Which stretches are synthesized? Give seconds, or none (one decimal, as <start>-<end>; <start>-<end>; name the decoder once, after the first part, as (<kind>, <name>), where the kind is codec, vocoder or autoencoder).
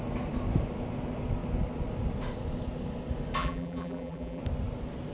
3.4-4.4 (vocoder, BigVGAN v2)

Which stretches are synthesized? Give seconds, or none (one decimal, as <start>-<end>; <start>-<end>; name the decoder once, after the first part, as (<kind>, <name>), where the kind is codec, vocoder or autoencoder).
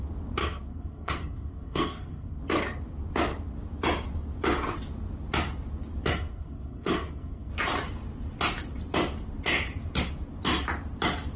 0.4-2.4 (codec, SNAC); 6.1-7.5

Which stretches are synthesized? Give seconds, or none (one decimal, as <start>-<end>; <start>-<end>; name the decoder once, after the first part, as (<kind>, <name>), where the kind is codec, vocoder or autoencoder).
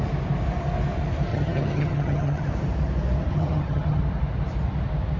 1.3-2.5 (vocoder, HiFi-GAN); 3.3-4.0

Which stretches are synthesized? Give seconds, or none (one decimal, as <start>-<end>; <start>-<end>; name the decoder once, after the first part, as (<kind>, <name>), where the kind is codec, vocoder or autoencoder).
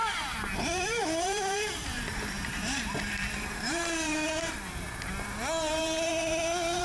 0.6-6.8 (vocoder, BigVGAN v2)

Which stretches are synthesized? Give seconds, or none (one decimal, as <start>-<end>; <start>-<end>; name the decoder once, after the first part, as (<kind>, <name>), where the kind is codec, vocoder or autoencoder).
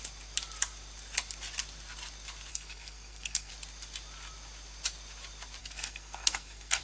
2.5-3.5 (codec, SNAC); 5.6-6.8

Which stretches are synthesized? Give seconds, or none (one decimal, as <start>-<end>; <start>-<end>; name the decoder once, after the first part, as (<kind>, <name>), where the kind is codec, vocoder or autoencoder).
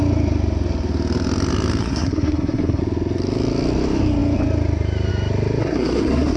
1.8-2.8 (codec, SNAC); 5.6-6.4